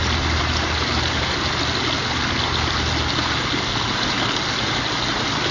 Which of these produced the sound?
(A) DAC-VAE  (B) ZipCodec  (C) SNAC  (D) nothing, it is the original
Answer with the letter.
D